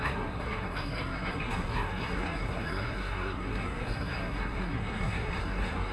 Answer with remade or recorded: remade